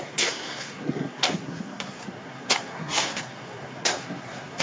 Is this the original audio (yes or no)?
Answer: no